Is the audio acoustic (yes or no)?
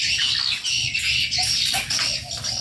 yes